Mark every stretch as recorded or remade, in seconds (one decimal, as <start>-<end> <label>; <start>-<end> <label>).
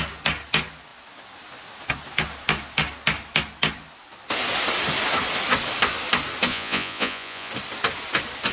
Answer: 0.0-6.5 recorded; 6.5-7.5 remade; 7.5-8.5 recorded